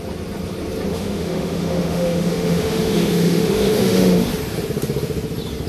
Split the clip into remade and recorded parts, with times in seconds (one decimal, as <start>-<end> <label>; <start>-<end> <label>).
0.0-0.9 recorded; 0.9-4.3 remade; 4.3-5.7 recorded